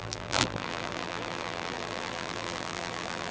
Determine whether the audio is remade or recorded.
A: remade